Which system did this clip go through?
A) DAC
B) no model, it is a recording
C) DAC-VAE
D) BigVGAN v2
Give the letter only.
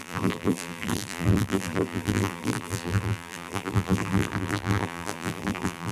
D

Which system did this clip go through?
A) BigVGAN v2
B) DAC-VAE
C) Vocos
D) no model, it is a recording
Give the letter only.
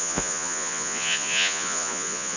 C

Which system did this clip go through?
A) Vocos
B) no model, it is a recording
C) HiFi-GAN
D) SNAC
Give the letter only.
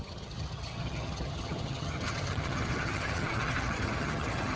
C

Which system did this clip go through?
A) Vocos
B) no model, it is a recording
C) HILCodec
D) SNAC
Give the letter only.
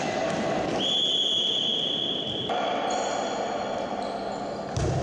B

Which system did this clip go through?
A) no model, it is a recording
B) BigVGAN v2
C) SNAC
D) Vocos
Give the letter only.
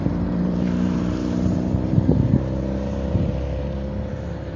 B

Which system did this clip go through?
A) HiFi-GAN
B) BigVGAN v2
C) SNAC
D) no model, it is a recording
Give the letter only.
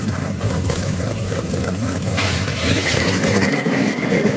C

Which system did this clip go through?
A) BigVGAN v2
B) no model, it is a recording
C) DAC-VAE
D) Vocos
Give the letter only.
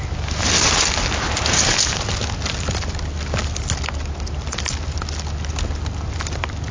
B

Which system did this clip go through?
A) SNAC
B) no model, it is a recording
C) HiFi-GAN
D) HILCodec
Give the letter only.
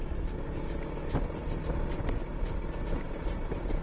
B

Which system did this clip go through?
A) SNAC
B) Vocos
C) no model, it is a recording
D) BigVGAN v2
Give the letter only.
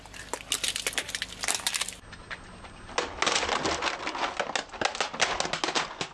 C